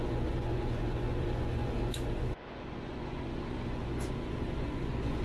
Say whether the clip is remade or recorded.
remade